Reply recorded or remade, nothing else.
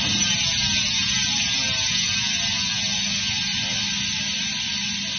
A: recorded